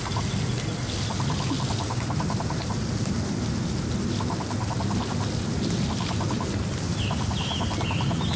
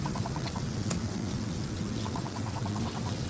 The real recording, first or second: first